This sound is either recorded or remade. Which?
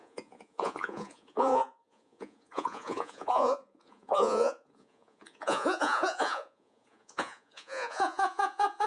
remade